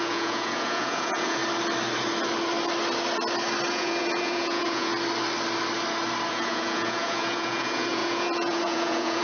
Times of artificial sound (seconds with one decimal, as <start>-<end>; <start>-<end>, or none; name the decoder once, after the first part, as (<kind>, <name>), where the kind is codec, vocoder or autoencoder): 0.0-1.4 (vocoder, Vocos); 3.7-4.9; 6.3-9.2